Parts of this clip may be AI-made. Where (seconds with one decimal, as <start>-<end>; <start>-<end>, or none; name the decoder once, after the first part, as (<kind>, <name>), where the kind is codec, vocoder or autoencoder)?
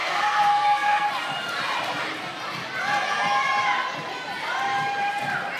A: 0.0-1.1 (codec, SNAC)